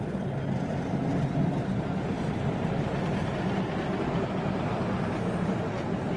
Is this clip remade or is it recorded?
recorded